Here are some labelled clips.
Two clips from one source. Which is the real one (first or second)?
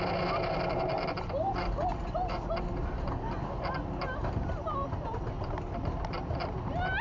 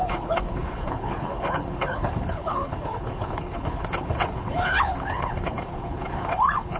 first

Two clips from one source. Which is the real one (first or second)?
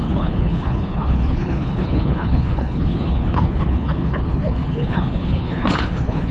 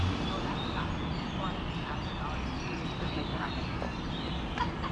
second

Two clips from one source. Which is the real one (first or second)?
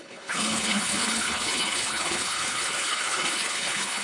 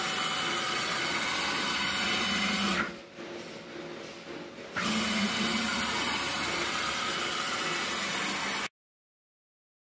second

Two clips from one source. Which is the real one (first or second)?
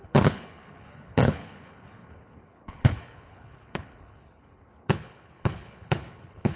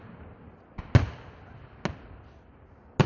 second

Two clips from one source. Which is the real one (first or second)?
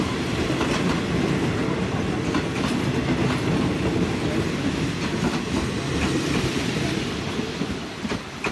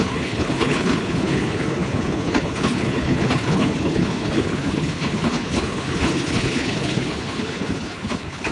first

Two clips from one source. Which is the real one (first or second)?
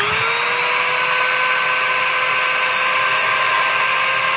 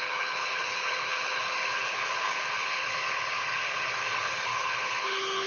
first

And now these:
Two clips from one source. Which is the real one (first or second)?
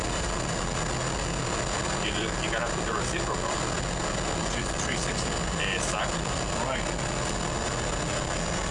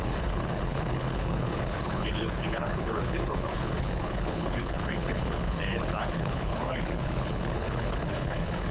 first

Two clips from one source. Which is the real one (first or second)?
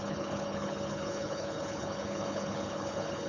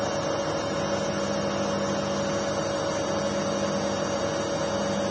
second